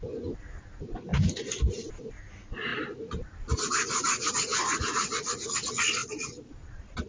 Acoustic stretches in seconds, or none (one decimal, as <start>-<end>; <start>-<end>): 0.0-1.1; 1.9-2.7; 4.3-6.0

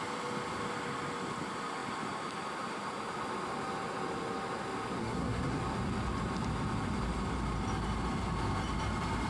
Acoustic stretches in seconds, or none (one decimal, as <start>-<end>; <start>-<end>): 0.0-5.0; 5.6-9.3

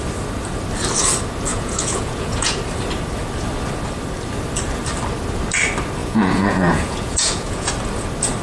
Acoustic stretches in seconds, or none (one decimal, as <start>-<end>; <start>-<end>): 0.0-1.5; 2.6-6.0; 7.7-8.4

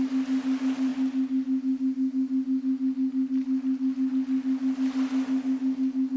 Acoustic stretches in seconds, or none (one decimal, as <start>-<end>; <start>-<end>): 0.0-6.2

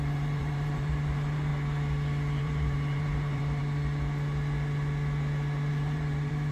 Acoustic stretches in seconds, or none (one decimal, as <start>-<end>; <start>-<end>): 1.5-2.4; 3.6-5.7

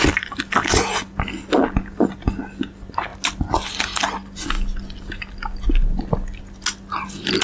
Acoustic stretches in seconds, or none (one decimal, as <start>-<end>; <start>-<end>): 0.0-7.4

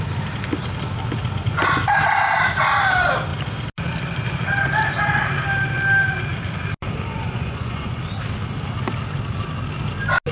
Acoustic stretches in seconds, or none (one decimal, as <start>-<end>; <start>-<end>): 0.0-7.1; 8.0-10.3

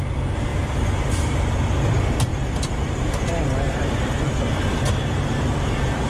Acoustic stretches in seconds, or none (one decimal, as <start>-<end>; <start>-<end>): 0.0-0.5; 1.6-2.3